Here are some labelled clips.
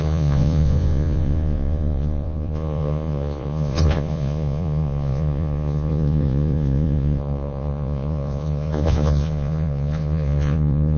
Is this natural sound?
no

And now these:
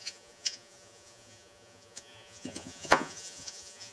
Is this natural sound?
no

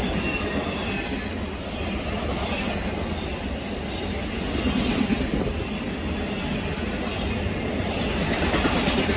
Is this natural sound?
yes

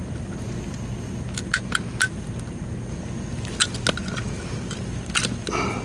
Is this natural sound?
yes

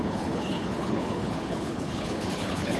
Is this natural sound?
no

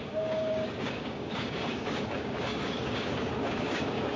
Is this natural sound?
no